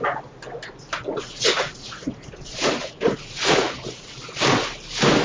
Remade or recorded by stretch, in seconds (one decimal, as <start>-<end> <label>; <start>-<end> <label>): 0.0-1.0 recorded; 1.0-4.1 remade; 4.1-5.2 recorded